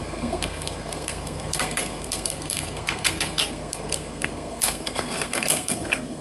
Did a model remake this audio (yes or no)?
yes